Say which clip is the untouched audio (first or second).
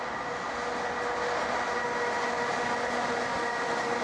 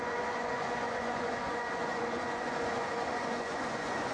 first